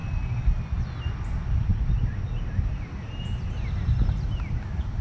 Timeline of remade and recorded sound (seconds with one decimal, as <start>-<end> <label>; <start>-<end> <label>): 0.0-5.0 recorded